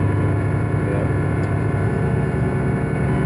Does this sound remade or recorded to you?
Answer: recorded